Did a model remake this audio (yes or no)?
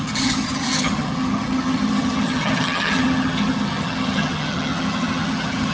yes